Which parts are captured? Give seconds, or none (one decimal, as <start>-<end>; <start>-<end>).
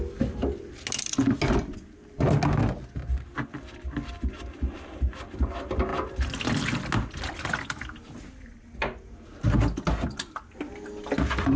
0.0-11.6